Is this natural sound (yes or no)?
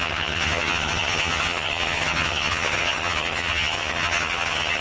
no